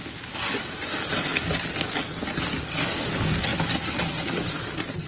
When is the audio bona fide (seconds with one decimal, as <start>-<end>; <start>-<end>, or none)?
0.0-3.5